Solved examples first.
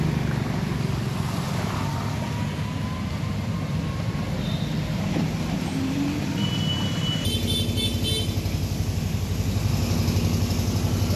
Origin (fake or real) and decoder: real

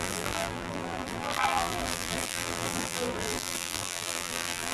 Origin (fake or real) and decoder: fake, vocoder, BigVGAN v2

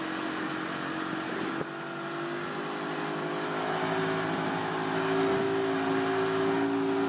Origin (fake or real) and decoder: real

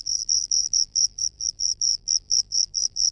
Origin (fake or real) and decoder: fake, vocoder, BigVGAN v2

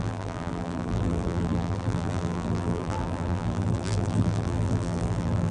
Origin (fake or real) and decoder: fake, vocoder, BigVGAN v2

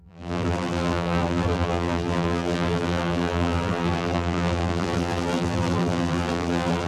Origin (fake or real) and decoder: fake, vocoder, BigVGAN v2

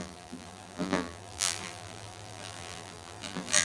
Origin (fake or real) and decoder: fake, vocoder, BigVGAN v2